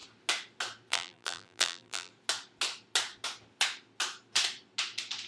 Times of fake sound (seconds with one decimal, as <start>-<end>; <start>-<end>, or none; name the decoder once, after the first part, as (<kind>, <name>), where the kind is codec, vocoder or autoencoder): 0.9-2.1 (vocoder, BigVGAN v2)